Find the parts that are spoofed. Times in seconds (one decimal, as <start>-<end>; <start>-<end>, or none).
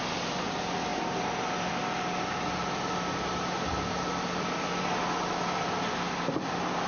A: none